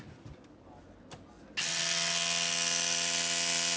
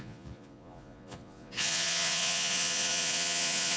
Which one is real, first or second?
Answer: first